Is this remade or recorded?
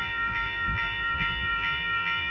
remade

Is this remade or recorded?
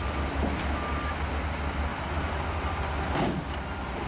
recorded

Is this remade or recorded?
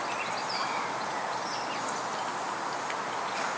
recorded